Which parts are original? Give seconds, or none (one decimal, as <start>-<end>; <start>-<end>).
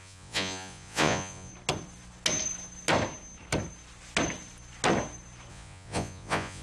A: 1.5-5.5